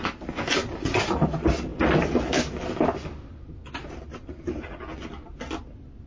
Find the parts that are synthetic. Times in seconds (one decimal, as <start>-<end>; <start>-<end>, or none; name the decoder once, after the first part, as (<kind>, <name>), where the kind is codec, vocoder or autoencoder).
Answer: none